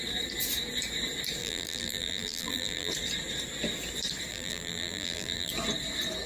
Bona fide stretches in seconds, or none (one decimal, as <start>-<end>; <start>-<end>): 0.0-1.4; 2.9-4.3; 5.5-6.3